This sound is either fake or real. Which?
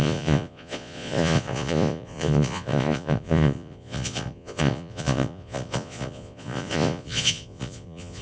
fake